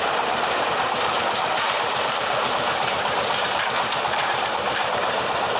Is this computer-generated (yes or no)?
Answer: yes